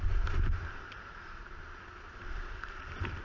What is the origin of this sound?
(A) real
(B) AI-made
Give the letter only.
B